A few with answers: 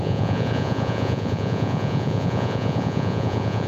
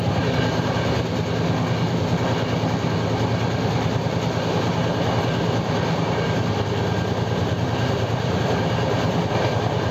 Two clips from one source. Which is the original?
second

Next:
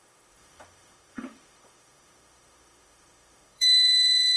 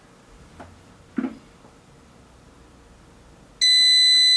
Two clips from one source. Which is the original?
second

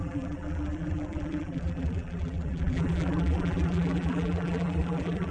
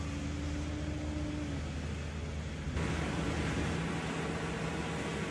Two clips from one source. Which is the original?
second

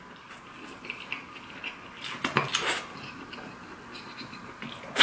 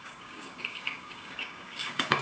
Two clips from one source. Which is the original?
first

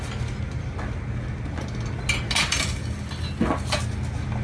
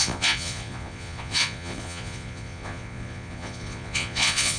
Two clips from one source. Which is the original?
first